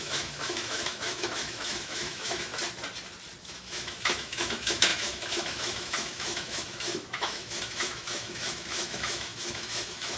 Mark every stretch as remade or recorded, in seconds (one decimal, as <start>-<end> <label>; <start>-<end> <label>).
0.0-2.5 remade; 2.5-3.4 recorded; 3.4-10.2 remade